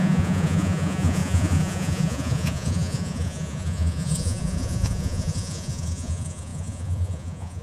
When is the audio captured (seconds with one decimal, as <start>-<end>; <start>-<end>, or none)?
none